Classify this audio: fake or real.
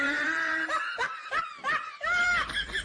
fake